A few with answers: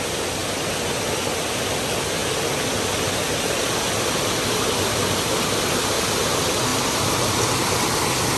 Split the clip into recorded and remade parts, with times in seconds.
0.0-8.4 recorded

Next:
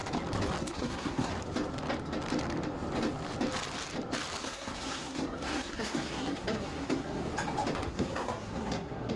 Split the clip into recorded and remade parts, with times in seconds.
0.0-0.6 recorded; 0.6-1.3 remade; 1.3-4.4 recorded; 4.4-7.2 remade; 7.2-7.9 recorded; 7.9-9.2 remade

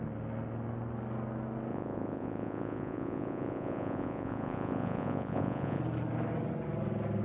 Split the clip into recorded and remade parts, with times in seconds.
0.0-1.7 recorded; 1.7-5.8 remade; 5.8-7.2 recorded

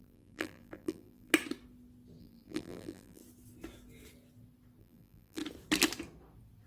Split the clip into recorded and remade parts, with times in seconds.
0.0-1.3 remade; 1.3-2.2 recorded; 2.2-3.2 remade; 3.2-4.8 recorded; 4.8-5.4 remade; 5.4-6.7 recorded

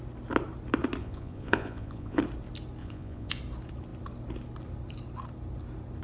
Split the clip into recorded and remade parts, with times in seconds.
0.0-1.0 recorded; 1.0-2.2 remade; 2.2-2.8 recorded; 2.8-3.4 remade; 3.4-6.0 recorded

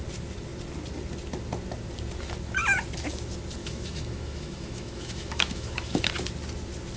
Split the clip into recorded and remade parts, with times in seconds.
0.0-3.6 recorded; 3.6-6.1 remade; 6.1-7.0 recorded

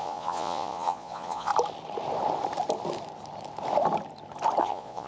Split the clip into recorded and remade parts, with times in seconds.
0.0-1.5 remade; 1.5-4.6 recorded; 4.6-5.1 remade